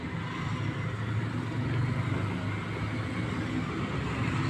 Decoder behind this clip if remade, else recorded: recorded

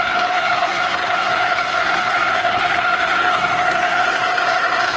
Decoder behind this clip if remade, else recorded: remade, codec, SNAC